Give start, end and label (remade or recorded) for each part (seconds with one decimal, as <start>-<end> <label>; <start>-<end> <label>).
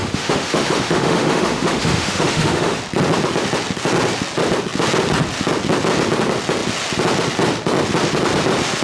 0.0-2.8 remade; 2.8-8.8 recorded